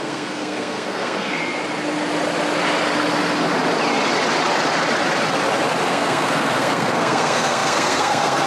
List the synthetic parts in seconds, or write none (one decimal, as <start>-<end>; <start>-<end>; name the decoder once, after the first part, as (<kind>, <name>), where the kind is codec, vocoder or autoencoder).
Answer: 0.0-1.4 (codec, SNAC); 5.9-8.5